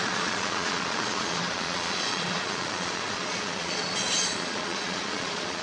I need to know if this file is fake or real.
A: fake